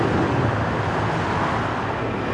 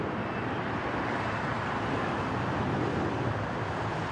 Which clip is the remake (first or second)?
second